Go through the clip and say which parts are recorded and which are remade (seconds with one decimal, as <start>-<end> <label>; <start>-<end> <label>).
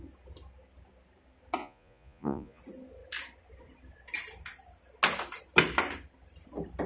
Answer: 0.0-1.6 recorded; 1.6-2.6 remade; 2.6-6.9 recorded